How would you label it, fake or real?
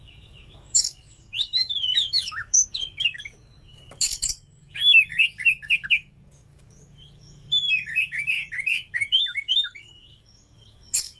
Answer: fake